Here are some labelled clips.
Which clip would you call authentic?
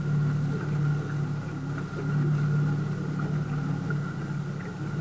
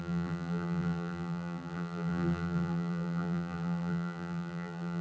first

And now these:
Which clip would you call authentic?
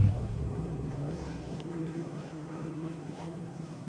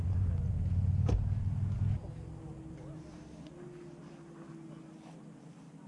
second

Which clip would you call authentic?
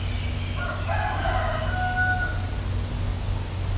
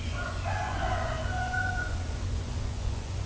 first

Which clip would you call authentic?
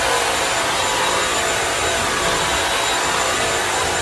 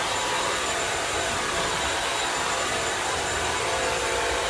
first